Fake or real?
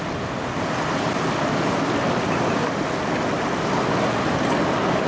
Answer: real